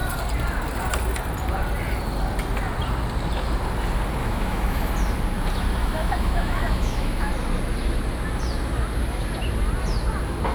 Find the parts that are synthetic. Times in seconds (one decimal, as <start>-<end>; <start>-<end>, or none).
4.2-4.9; 5.8-7.3